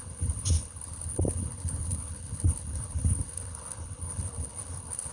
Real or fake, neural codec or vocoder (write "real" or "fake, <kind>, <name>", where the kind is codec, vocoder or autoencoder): fake, codec, HILCodec